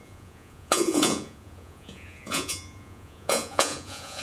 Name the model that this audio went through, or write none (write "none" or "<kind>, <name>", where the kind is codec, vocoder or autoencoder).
vocoder, Vocos